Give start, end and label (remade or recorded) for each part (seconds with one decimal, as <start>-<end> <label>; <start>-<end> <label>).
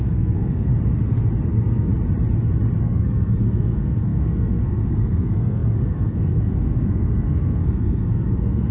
0.0-0.7 remade; 0.7-1.5 recorded; 1.5-1.9 remade; 1.9-2.8 recorded; 2.8-8.7 remade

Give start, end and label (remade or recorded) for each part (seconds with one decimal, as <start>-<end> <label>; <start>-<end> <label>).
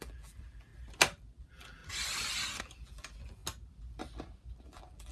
0.0-0.7 remade; 0.7-1.4 recorded; 1.4-1.8 remade; 1.8-2.6 recorded; 2.6-3.4 remade; 3.4-4.6 recorded; 4.6-5.1 remade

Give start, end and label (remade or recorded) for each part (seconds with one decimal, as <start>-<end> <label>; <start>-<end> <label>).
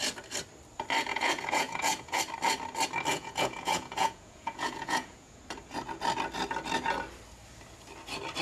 0.0-1.1 recorded; 1.1-2.2 remade; 2.2-3.1 recorded; 3.1-5.4 remade; 5.4-8.4 recorded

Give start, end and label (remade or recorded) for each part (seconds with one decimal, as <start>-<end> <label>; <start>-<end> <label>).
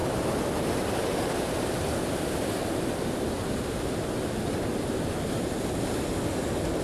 0.0-6.8 recorded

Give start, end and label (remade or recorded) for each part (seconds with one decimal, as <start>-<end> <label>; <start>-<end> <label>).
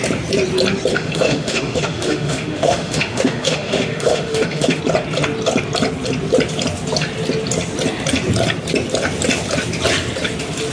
0.0-0.9 recorded; 0.9-4.8 remade; 4.8-10.7 recorded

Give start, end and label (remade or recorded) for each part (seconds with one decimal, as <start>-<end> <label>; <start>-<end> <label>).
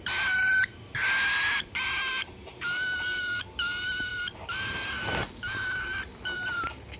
0.0-4.1 remade; 4.1-4.6 recorded; 4.6-7.0 remade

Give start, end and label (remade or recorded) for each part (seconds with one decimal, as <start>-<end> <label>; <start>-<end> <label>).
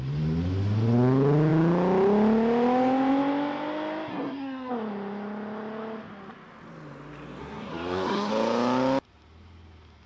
0.0-4.1 recorded; 4.1-4.7 remade; 4.7-7.4 recorded; 7.4-8.3 remade; 8.3-10.1 recorded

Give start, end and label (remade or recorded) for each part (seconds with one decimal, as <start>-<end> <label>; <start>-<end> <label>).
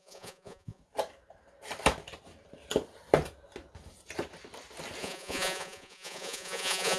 0.0-0.8 remade; 0.8-5.0 recorded; 5.0-7.0 remade